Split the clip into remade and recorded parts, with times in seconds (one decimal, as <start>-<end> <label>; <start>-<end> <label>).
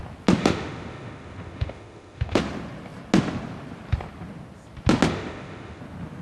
0.0-0.4 recorded; 0.4-2.4 remade; 2.4-5.1 recorded; 5.1-5.8 remade; 5.8-6.2 recorded